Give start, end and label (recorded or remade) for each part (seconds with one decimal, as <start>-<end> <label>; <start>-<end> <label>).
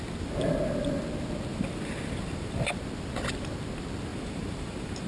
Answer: 0.0-1.5 recorded; 1.5-2.6 remade; 2.6-4.1 recorded; 4.1-5.1 remade